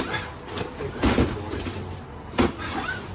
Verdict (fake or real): real